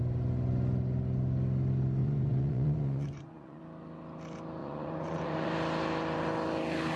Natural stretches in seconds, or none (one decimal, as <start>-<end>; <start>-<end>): 0.0-2.0; 3.6-4.6; 5.5-7.0